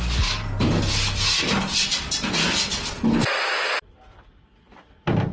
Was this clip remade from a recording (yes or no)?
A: no